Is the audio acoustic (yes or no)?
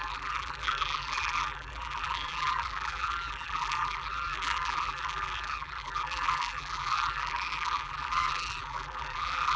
no